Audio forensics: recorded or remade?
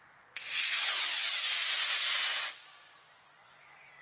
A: remade